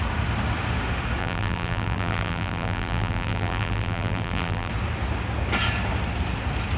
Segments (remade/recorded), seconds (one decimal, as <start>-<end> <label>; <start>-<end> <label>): 0.0-1.2 recorded; 1.2-4.7 remade; 4.7-6.8 recorded